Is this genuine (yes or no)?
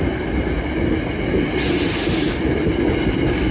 yes